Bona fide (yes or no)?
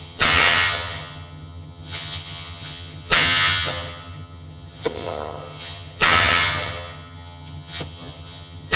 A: no